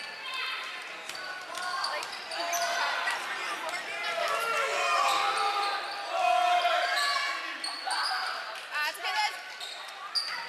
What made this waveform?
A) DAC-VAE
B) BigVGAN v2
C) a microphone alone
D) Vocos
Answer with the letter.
C